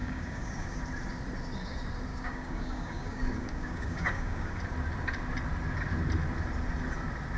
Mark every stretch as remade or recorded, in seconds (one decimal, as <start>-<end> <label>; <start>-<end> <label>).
0.0-0.8 remade; 0.8-2.1 recorded; 2.1-4.5 remade; 4.5-7.4 recorded